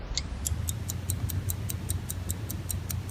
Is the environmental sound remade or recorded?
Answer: recorded